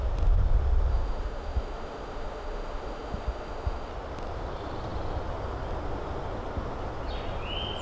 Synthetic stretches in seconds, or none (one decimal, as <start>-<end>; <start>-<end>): 0.9-3.9